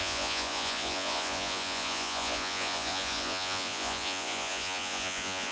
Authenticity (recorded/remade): remade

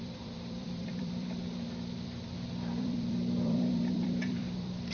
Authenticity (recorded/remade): remade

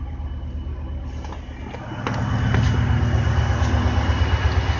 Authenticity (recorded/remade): recorded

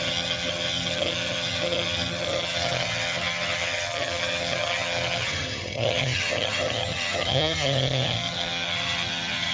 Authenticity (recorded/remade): remade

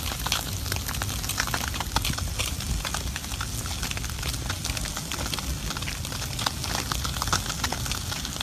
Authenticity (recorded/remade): recorded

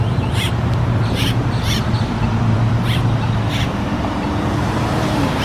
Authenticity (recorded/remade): remade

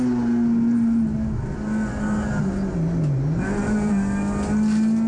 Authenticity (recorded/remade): recorded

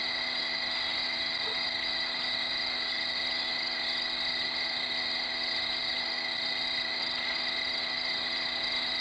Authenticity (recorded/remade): recorded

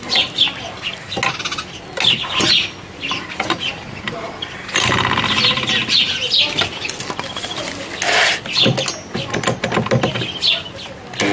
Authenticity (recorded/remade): recorded